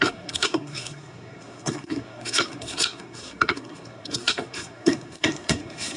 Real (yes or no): no